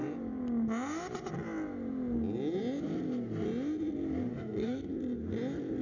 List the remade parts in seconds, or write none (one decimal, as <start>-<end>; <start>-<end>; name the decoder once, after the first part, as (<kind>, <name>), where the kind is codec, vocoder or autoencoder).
4.3-4.9 (codec, SNAC)